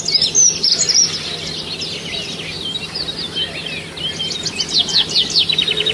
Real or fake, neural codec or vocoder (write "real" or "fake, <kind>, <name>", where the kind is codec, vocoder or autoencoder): real